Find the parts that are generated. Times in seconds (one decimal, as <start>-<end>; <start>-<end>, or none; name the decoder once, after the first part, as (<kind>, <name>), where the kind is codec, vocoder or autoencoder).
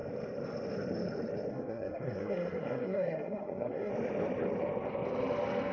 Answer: 1.5-3.9 (codec, SNAC)